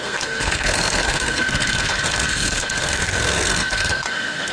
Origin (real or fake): fake